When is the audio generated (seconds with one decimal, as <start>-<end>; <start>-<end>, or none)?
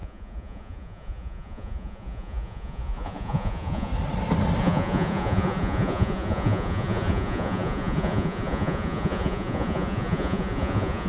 0.0-3.9; 4.6-11.1